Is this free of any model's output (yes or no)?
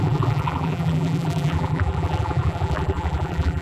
no